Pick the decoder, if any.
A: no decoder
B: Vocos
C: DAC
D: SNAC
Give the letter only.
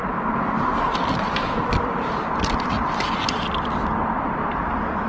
A